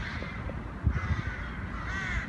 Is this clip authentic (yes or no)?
yes